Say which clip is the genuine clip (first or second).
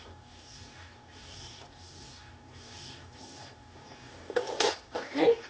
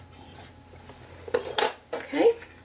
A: second